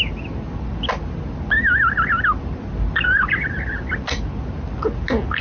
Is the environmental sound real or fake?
real